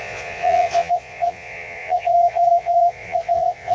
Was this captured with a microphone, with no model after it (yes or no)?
no